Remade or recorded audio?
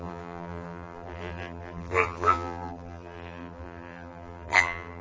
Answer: remade